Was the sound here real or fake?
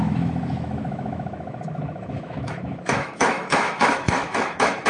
fake